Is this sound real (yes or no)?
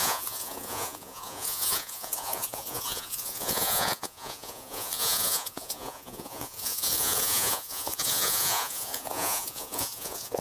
no